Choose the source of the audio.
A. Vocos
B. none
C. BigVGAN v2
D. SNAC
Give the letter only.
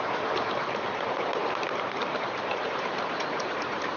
C